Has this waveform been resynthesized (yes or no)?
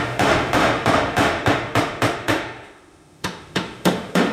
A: yes